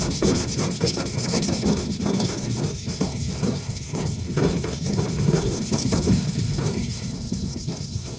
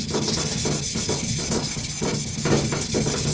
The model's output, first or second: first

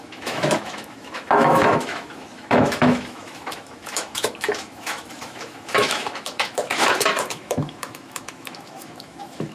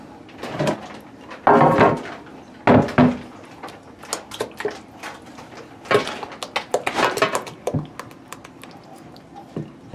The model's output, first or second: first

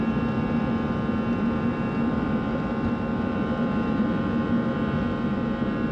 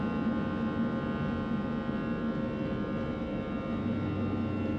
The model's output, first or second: first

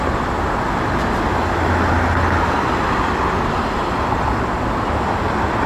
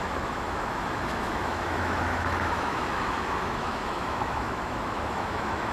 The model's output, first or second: second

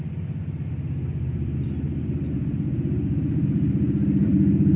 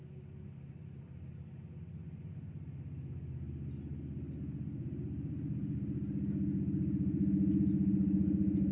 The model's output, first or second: first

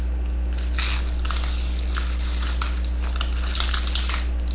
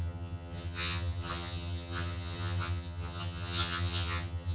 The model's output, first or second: second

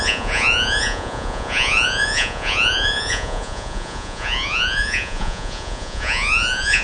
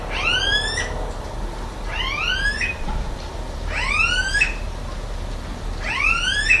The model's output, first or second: first